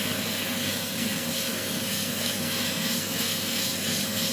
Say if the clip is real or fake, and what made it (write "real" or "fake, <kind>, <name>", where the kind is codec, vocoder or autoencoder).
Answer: fake, codec, SNAC